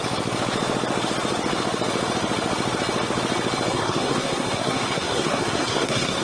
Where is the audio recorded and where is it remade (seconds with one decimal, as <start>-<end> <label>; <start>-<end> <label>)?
0.0-3.7 recorded; 3.7-6.2 remade